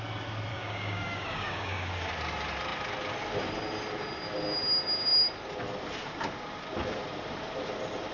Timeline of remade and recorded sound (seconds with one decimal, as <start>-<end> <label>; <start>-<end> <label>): 0.0-0.5 recorded; 0.5-1.9 remade; 1.9-8.1 recorded